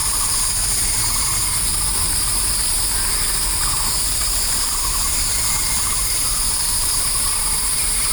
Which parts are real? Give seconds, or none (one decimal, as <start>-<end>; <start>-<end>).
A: 0.0-3.9